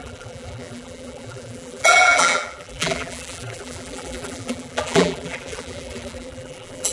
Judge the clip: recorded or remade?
remade